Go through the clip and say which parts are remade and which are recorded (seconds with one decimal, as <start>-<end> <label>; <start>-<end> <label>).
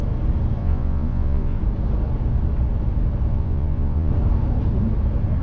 0.0-0.6 recorded; 0.6-1.6 remade; 1.6-3.3 recorded; 3.3-4.1 remade; 4.1-5.4 recorded